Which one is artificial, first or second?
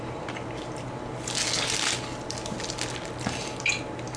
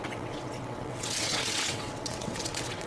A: second